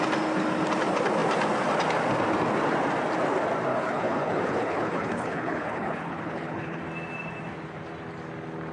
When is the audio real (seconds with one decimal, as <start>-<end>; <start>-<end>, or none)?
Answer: 0.0-3.7; 6.8-8.7